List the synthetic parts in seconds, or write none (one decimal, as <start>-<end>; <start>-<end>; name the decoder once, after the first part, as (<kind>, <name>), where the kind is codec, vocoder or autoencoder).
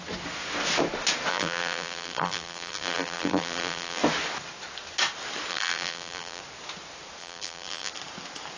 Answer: 1.3-4.0 (vocoder, BigVGAN v2); 5.5-6.4; 7.2-7.9